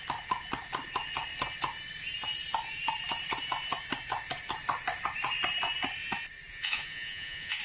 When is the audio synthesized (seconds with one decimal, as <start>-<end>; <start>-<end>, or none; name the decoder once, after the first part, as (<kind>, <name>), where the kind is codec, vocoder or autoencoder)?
6.5-7.6 (vocoder, Vocos)